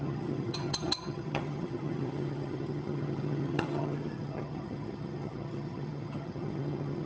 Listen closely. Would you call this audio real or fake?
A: fake